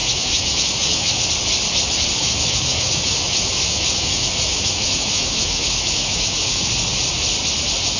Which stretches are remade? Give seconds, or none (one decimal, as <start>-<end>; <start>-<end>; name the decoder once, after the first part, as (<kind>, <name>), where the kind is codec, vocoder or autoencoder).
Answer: 0.0-1.3 (autoencoder, DAC-VAE); 2.2-6.7